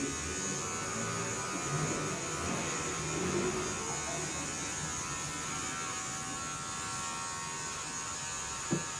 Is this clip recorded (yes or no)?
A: yes